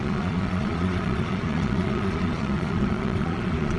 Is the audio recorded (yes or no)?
no